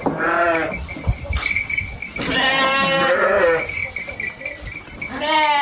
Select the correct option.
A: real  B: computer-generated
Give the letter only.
A